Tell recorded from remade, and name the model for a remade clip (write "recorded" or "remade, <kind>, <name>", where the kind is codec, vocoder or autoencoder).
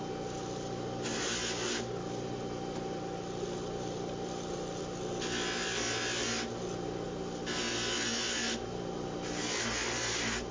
recorded